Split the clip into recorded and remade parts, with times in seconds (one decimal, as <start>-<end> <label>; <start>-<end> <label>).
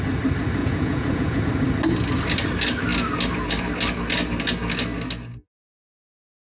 0.0-0.6 recorded; 0.6-1.4 remade; 1.4-6.6 recorded